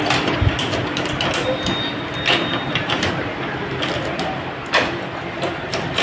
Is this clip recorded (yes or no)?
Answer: yes